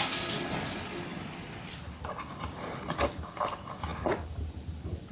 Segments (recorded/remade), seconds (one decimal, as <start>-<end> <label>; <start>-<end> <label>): 0.0-5.1 recorded